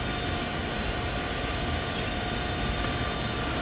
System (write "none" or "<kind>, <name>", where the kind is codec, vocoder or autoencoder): none